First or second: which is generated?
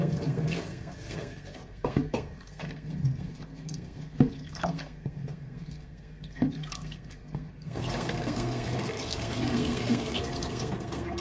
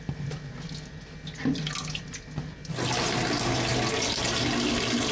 first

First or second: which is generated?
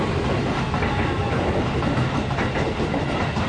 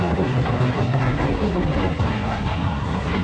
second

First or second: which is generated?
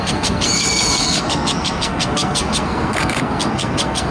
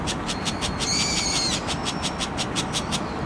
first